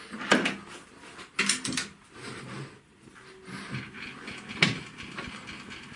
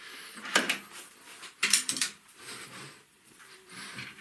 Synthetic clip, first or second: second